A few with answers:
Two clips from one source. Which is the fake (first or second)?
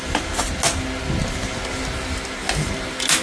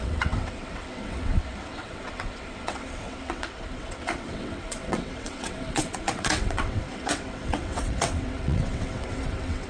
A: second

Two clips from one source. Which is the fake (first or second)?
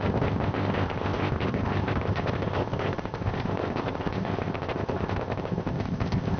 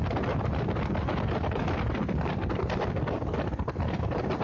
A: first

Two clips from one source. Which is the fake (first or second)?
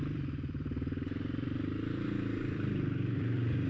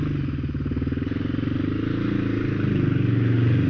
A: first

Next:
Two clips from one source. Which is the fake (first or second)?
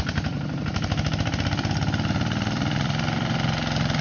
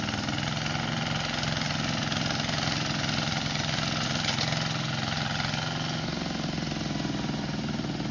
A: first